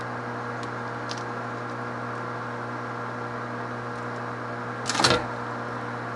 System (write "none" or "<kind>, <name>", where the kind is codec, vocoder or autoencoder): none